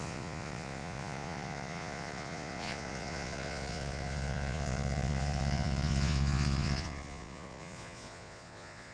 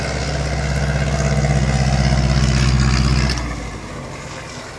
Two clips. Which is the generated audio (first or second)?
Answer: first